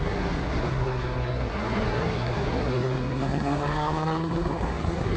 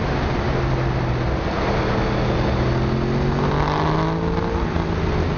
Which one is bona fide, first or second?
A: second